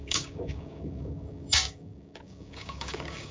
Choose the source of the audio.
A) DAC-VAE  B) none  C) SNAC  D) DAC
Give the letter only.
D